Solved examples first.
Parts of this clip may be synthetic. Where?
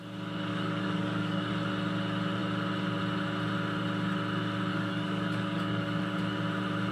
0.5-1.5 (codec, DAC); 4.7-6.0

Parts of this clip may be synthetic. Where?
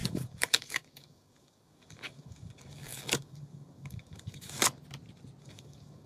0.0-4.6 (codec, DAC); 5.4-6.1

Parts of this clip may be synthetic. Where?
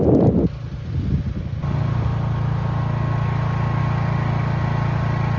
none